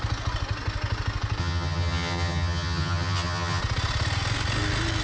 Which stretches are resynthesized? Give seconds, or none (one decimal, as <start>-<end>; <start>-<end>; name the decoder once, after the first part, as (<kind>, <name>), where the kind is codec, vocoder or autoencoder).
1.4-3.6 (vocoder, HiFi-GAN)